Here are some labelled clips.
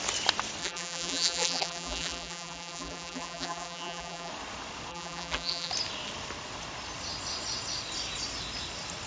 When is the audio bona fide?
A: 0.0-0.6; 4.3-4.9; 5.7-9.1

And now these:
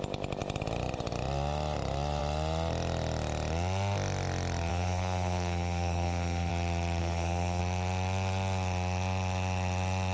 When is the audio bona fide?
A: 0.0-4.7; 6.5-7.0; 7.6-10.1

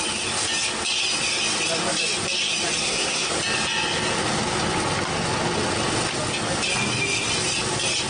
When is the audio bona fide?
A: 0.0-2.8; 3.3-8.1

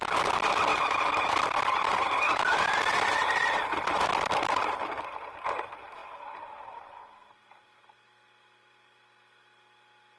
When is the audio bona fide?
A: 0.0-0.7; 5.0-10.2

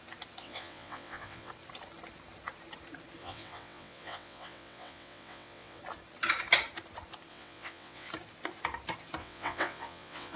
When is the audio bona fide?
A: 0.0-0.4; 1.5-3.2; 5.8-7.3; 8.1-9.2

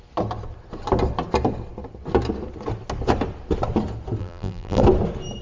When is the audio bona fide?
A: 0.0-4.2; 4.8-5.4